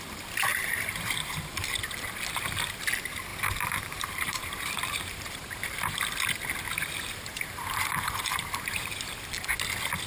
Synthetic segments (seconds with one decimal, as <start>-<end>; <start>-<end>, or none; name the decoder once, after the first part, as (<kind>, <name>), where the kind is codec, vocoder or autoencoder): 0.5-1.6 (vocoder, BigVGAN v2); 3.3-6.0; 7.3-9.1